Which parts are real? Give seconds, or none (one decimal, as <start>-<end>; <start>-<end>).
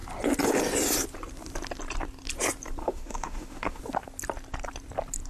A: 0.0-2.8; 3.8-5.3